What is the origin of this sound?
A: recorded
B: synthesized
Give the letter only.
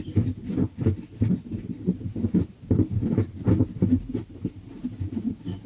A